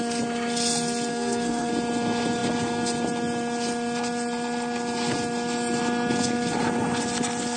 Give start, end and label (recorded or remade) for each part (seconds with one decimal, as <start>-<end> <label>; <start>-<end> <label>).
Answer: 0.0-1.1 recorded; 1.1-1.7 remade; 1.7-7.6 recorded